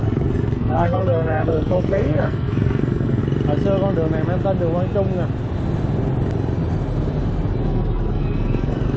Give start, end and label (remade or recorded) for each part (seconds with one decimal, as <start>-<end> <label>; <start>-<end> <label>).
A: 0.0-3.2 remade; 3.2-7.6 recorded; 7.6-9.0 remade